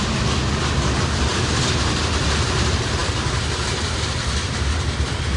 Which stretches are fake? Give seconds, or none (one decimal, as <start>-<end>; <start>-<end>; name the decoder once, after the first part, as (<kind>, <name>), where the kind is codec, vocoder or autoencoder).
none